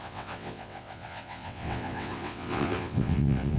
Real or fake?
fake